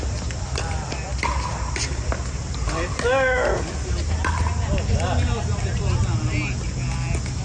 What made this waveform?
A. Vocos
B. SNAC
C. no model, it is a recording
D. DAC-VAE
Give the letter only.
C